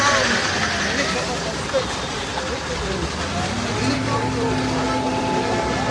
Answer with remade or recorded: recorded